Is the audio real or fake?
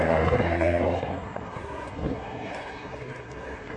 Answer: fake